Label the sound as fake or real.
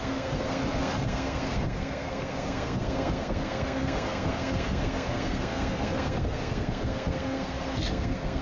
fake